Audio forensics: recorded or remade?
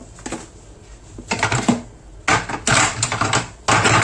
recorded